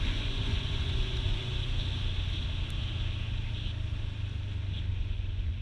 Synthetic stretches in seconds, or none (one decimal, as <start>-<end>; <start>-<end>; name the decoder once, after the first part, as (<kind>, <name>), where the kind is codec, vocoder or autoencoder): 0.0-1.5 (vocoder, Vocos); 4.9-5.6

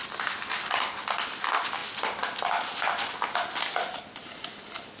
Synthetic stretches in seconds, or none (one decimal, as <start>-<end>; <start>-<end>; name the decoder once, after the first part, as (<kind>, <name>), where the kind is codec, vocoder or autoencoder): none

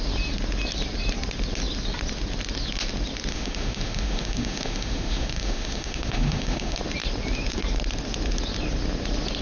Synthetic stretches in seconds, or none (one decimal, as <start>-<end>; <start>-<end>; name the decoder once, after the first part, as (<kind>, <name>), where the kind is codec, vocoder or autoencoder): 3.3-6.8 (autoencoder, DAC-VAE)

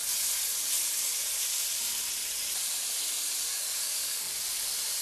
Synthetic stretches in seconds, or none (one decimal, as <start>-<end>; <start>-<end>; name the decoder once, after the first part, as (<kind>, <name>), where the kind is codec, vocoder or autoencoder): 3.5-4.4 (codec, DAC)

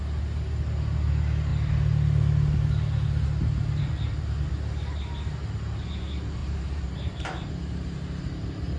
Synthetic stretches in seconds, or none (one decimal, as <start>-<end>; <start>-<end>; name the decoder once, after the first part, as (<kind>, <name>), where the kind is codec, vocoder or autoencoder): 6.4-7.5 (vocoder, BigVGAN v2)

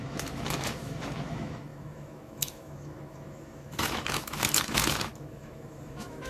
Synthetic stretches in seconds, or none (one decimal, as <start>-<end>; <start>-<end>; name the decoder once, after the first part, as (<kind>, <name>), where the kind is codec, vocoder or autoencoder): 0.0-6.3 (autoencoder, DAC-VAE)

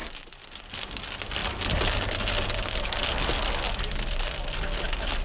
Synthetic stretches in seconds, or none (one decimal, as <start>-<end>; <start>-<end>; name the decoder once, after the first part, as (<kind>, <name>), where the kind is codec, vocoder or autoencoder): none